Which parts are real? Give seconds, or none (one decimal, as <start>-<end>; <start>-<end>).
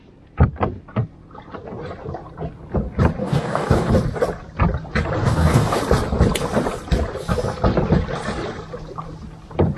0.0-3.2; 3.9-5.2; 5.8-9.8